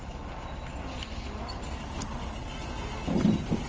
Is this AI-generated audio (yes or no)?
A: no